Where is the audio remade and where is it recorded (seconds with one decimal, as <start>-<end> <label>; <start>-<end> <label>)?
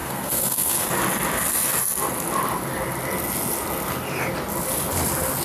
0.0-0.9 remade; 0.9-5.4 recorded